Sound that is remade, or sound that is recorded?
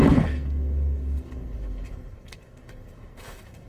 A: remade